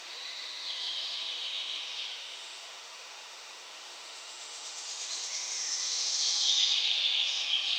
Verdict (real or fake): fake